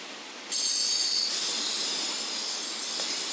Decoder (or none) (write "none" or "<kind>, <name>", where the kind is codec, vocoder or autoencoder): vocoder, BigVGAN v2